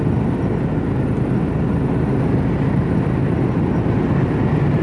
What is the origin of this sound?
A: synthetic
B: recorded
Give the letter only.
B